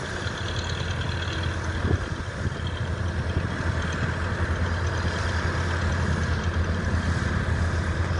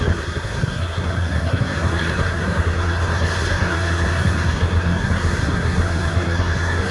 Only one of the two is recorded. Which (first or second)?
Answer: first